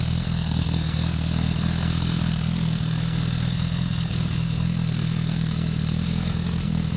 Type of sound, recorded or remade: remade